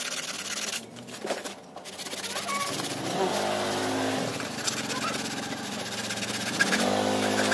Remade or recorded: recorded